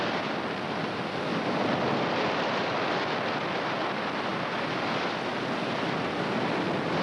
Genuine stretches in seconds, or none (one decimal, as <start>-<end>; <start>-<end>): 0.0-4.3; 5.3-7.0

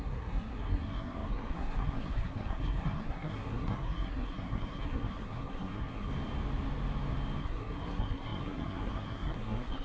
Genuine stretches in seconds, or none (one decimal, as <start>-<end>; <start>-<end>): 6.1-7.4